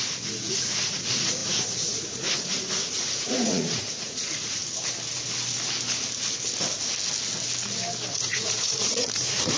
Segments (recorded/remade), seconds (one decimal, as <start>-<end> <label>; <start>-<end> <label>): 0.0-4.6 remade; 4.6-8.1 recorded; 8.1-9.6 remade